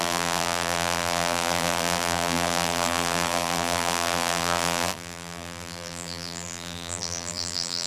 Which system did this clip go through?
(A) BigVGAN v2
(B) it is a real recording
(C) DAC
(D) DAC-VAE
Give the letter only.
A